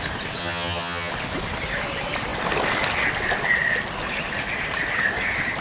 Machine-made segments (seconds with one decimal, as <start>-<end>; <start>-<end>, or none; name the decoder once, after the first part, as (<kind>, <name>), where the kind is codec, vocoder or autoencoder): 0.4-1.1 (vocoder, HiFi-GAN)